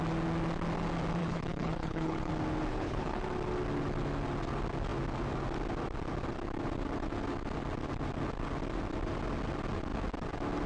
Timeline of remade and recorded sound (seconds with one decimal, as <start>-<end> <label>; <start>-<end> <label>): 0.0-1.2 recorded; 1.2-2.3 remade; 2.3-2.7 recorded; 2.7-3.2 remade; 3.2-10.7 recorded